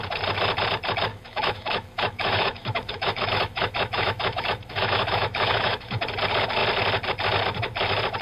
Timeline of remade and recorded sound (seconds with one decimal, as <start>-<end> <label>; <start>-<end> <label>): 0.0-1.1 recorded; 1.1-6.0 remade; 6.0-8.2 recorded